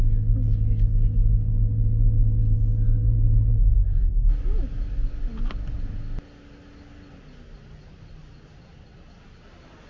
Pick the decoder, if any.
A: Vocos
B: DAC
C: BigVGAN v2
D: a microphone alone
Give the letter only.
D